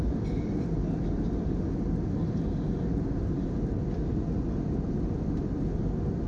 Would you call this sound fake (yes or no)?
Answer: no